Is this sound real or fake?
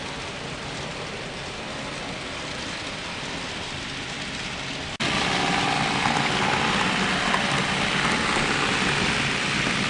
real